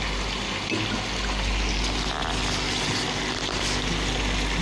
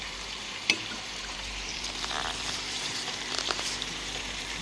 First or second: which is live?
first